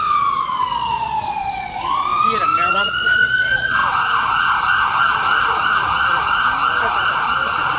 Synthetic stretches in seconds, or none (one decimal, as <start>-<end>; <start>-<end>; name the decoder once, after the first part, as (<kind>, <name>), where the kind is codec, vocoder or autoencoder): 0.0-2.1 (vocoder, Vocos); 2.7-3.8; 5.0-6.3; 7.0-7.8